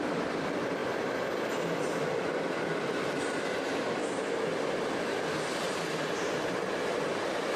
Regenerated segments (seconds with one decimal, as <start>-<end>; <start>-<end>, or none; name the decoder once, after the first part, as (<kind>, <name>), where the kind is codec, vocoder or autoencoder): 0.0-4.0 (vocoder, BigVGAN v2); 6.7-7.6